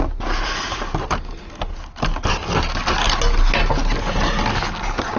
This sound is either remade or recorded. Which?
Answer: recorded